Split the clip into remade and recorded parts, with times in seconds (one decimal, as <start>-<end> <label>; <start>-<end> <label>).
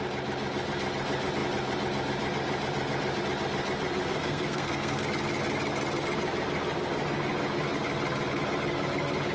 0.0-4.1 recorded; 4.1-5.0 remade; 5.0-9.3 recorded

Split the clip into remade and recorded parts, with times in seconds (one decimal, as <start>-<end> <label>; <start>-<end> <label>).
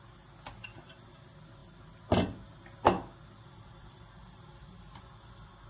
0.0-5.7 recorded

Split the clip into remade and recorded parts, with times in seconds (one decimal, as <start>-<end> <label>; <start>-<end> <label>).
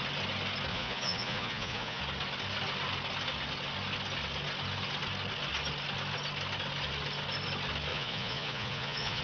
0.0-0.7 recorded; 0.7-2.0 remade; 2.0-7.9 recorded; 7.9-9.2 remade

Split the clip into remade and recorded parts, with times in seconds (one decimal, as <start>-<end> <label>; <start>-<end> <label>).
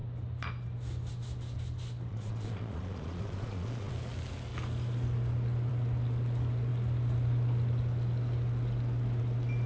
0.0-2.1 recorded; 2.1-3.9 remade; 3.9-9.7 recorded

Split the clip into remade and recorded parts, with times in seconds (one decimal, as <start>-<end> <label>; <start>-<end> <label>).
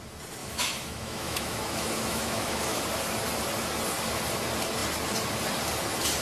0.0-0.4 recorded; 0.4-2.8 remade; 2.8-6.2 recorded